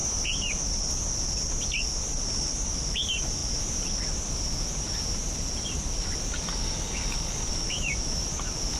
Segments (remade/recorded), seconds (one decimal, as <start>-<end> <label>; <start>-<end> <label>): 0.0-0.8 remade; 0.8-8.8 recorded